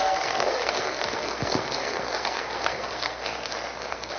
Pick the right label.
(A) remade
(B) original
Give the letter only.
A